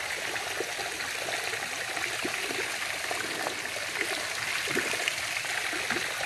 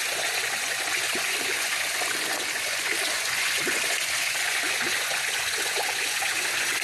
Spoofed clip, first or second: second